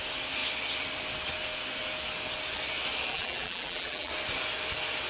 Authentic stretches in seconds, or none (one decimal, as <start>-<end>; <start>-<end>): 0.0-3.1; 4.1-5.1